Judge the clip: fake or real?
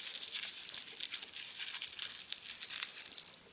real